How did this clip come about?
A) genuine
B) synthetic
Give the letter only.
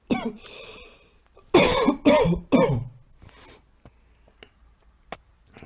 A